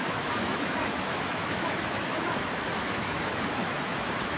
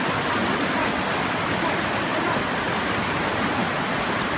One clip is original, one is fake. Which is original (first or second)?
second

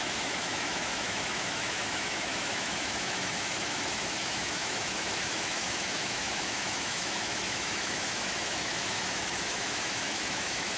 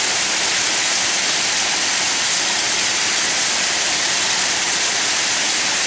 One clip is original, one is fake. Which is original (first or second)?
second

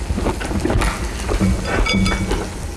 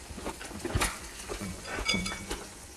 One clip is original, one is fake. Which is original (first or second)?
first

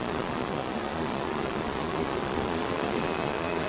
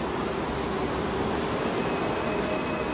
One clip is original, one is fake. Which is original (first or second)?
second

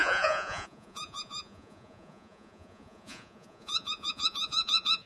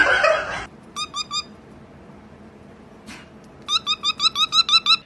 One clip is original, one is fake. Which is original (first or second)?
second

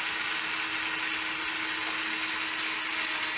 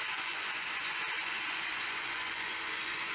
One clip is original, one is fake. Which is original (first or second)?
first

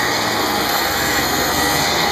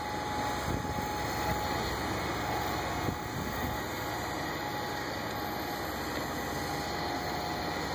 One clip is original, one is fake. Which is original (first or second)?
second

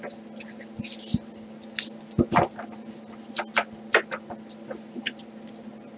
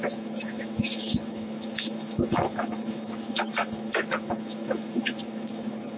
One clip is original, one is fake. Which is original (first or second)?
first